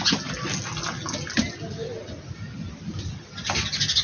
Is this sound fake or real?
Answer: real